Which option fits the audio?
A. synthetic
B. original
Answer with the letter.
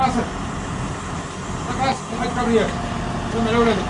B